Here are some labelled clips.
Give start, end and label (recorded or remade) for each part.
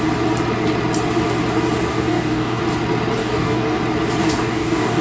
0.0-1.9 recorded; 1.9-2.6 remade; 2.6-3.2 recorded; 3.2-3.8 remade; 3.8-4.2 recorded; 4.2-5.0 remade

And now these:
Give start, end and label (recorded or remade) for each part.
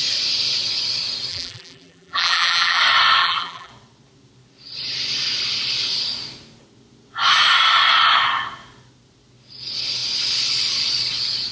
0.0-1.3 recorded; 1.3-2.8 remade; 2.8-3.2 recorded; 3.2-3.7 remade; 3.7-11.5 recorded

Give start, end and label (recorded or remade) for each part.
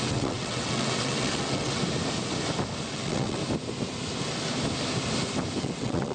0.0-1.8 remade; 1.8-2.9 recorded; 2.9-3.4 remade; 3.4-5.6 recorded; 5.6-6.1 remade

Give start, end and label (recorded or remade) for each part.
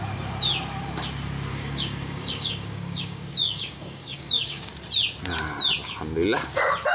0.0-1.5 recorded; 1.5-4.7 remade; 4.7-6.9 recorded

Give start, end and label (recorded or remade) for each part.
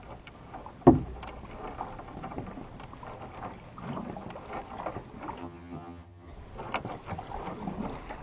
0.0-5.4 recorded; 5.4-6.3 remade; 6.3-8.2 recorded